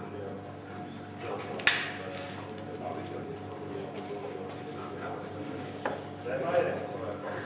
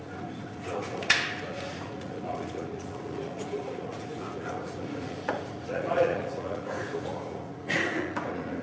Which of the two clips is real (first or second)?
first